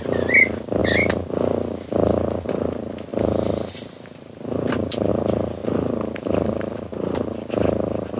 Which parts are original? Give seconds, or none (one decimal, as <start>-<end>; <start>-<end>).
0.0-3.1; 5.1-5.6; 6.7-8.2